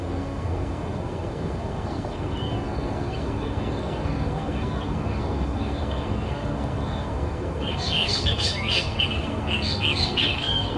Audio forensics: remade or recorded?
remade